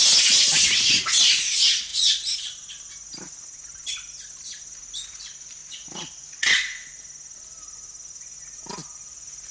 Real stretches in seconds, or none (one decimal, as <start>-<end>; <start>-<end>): 0.0-5.6; 6.9-9.5